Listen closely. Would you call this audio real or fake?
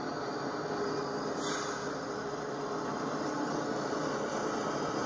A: real